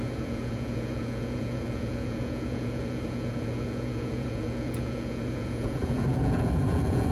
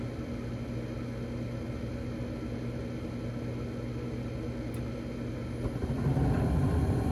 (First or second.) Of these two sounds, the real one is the second